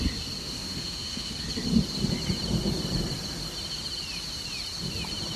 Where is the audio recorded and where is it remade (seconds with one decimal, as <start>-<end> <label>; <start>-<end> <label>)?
0.0-0.4 recorded; 0.4-1.3 remade; 1.3-5.4 recorded